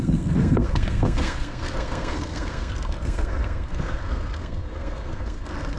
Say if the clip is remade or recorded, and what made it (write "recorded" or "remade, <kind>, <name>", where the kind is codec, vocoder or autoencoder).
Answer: remade, codec, SNAC